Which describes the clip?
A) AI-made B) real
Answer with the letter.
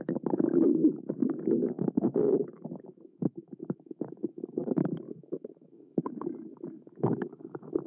A